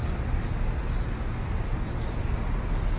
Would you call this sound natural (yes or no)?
yes